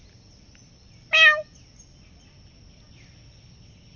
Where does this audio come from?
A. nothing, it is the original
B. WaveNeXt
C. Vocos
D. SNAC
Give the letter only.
A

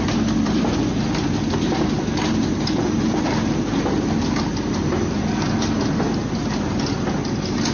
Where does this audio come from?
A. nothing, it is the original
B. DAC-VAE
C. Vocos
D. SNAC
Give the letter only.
A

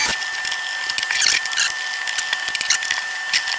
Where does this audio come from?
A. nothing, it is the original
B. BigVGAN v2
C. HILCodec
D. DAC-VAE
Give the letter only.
A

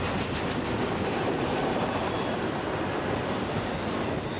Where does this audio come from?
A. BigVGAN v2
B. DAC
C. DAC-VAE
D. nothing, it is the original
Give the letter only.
D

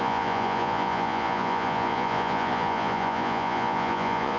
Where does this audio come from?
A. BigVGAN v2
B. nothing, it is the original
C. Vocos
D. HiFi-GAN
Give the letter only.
C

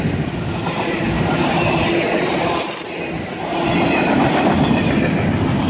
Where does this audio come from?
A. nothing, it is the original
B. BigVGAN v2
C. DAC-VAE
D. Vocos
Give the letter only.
A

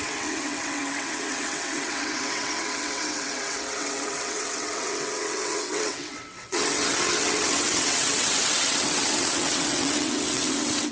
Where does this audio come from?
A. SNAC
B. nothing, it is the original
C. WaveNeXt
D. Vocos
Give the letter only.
C